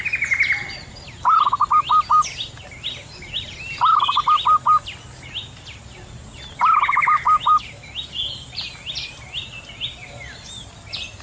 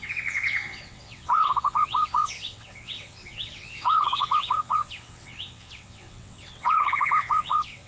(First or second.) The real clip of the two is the first